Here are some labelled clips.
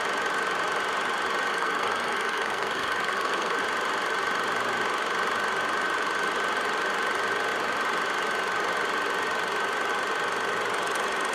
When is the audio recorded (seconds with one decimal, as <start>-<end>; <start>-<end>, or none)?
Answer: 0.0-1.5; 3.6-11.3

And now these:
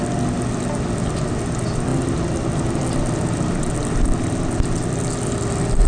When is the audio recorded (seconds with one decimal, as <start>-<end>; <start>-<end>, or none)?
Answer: 0.0-5.9

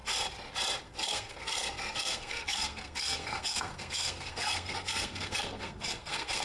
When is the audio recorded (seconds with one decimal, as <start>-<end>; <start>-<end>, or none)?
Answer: 0.0-0.8

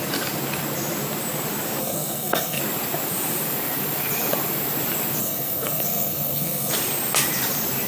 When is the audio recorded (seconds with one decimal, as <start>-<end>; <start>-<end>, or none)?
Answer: 0.0-1.8; 2.6-5.2; 6.7-7.9